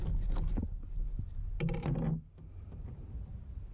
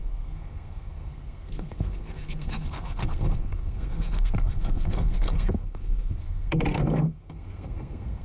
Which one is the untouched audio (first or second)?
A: first